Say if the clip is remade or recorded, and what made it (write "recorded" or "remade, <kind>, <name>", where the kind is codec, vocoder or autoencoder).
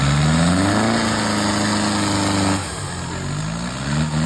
recorded